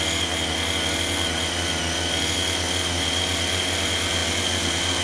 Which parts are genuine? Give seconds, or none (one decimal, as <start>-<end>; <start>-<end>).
0.0-5.0